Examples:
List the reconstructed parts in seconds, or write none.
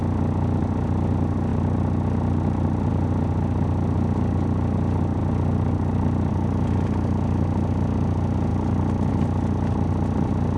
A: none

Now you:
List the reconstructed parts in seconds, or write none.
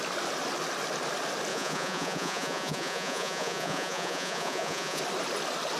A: 1.5-5.0 (vocoder, Vocos)